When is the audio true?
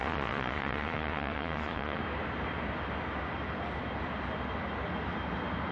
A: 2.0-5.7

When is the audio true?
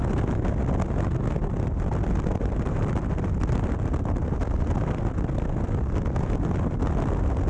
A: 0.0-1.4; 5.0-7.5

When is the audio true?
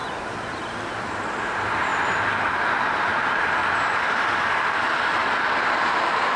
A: 0.0-0.6; 1.9-2.8; 3.6-4.8; 5.2-5.8